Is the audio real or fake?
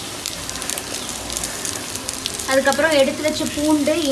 real